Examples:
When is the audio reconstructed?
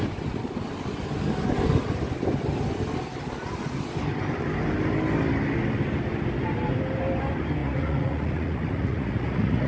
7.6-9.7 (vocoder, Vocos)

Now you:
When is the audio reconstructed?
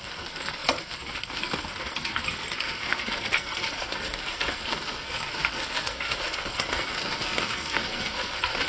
0.0-8.7 (codec, SNAC)